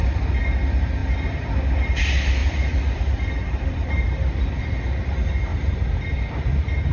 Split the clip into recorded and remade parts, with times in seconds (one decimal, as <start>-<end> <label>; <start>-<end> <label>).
0.0-1.0 recorded; 1.0-1.6 remade; 1.6-2.4 recorded; 2.4-4.6 remade; 4.6-5.5 recorded; 5.5-6.4 remade; 6.4-6.9 recorded